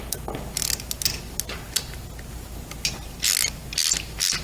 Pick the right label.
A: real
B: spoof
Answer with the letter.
A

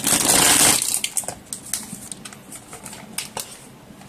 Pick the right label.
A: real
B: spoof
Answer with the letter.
A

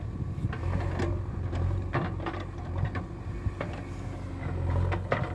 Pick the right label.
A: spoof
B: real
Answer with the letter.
B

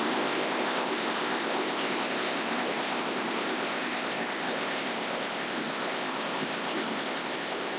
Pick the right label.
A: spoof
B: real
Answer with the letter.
A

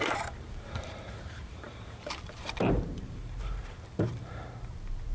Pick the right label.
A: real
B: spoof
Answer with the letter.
B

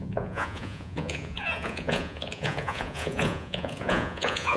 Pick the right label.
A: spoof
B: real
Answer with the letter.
A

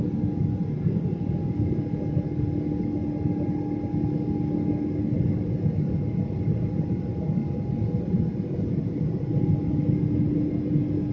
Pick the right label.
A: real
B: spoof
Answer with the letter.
A